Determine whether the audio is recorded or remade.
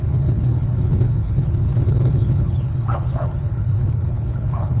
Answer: remade